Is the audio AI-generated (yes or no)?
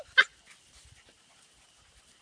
no